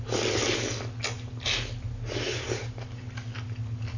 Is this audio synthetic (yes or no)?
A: no